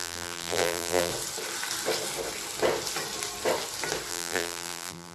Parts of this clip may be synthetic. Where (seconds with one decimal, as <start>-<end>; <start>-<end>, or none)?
0.0-1.1; 4.1-5.1